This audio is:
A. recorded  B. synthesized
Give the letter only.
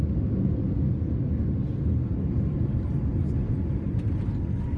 A